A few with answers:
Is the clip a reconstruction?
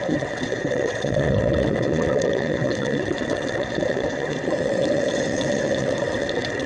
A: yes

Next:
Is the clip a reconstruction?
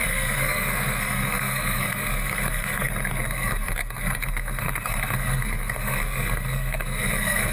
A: yes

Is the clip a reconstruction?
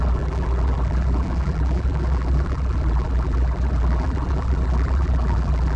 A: yes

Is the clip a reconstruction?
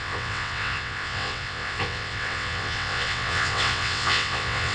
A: yes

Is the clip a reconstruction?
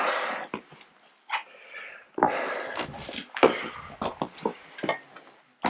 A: no